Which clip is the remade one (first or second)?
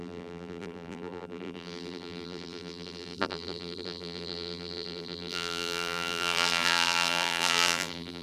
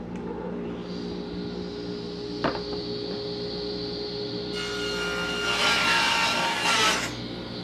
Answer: first